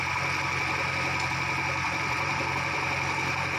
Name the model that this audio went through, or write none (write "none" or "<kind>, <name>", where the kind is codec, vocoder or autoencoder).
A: vocoder, BigVGAN v2